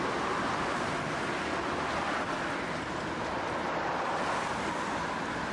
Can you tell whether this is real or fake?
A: real